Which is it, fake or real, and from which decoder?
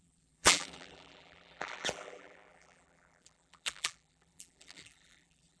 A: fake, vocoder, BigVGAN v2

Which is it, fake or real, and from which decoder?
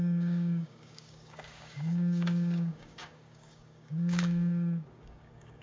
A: fake, codec, DAC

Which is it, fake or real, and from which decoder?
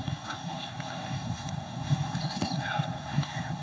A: fake, codec, SNAC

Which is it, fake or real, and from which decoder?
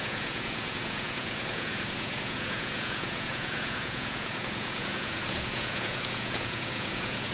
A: fake, vocoder, Vocos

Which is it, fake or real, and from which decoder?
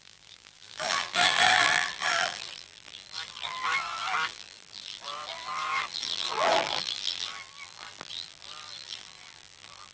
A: fake, vocoder, BigVGAN v2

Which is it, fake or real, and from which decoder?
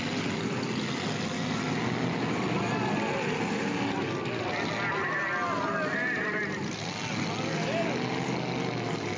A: real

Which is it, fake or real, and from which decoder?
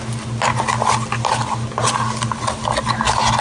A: real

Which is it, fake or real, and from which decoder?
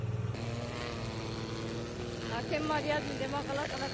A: real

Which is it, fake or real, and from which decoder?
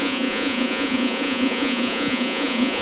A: fake, vocoder, Vocos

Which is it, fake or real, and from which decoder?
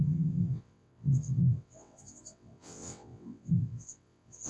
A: fake, vocoder, WaveNeXt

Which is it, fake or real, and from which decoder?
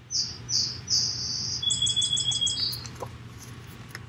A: real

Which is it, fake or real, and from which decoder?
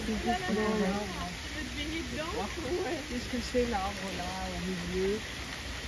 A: real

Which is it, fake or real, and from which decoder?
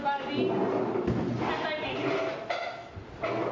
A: real